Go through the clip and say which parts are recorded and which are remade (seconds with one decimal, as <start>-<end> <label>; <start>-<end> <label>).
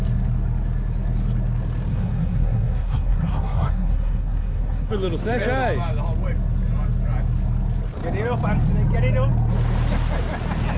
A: 0.0-1.9 recorded; 1.9-4.9 remade; 4.9-10.8 recorded